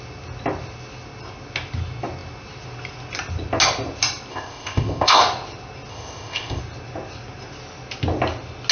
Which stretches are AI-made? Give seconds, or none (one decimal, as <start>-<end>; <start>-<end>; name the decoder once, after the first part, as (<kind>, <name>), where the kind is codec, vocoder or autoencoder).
4.3-5.2 (codec, ZipCodec); 5.9-6.6